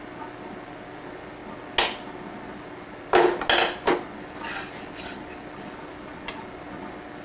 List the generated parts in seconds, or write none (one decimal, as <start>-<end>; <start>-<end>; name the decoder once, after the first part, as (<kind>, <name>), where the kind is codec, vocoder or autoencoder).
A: none

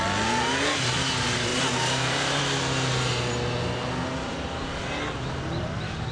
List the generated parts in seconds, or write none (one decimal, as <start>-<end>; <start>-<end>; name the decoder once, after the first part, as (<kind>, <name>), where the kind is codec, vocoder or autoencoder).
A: 1.5-2.4 (vocoder, BigVGAN v2)

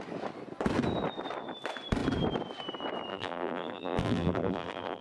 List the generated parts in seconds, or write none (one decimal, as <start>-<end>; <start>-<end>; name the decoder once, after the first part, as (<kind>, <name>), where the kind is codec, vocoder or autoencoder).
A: 3.1-5.0 (vocoder, BigVGAN v2)

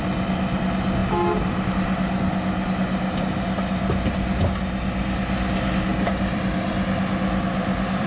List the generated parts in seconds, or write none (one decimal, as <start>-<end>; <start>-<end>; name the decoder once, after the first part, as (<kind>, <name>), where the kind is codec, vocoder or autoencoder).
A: 5.9-6.7 (vocoder, BigVGAN v2); 7.5-8.1

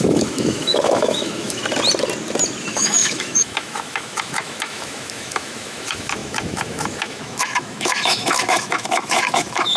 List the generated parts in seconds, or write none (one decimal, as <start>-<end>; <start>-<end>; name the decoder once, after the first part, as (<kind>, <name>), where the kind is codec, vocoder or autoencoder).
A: 0.0-1.6 (autoencoder, DAC-VAE); 2.6-9.8

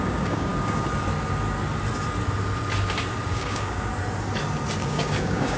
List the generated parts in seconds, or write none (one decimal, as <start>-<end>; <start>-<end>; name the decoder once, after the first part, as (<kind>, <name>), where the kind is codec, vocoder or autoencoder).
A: 0.0-0.5 (codec, DAC); 3.3-3.9; 4.8-5.6

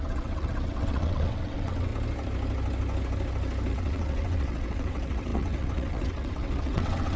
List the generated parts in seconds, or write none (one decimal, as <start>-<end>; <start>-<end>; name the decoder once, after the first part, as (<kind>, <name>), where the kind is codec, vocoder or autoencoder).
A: 0.0-1.9 (vocoder, WaveNeXt); 3.7-7.2